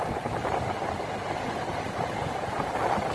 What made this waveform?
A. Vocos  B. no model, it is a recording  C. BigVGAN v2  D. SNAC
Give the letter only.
B